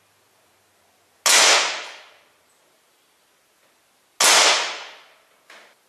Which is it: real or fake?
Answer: real